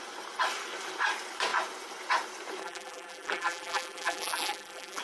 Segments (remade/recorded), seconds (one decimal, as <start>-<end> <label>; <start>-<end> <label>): 0.0-2.6 recorded; 2.6-5.0 remade